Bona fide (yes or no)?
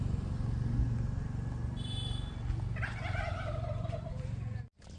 yes